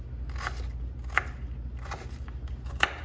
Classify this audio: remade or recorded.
recorded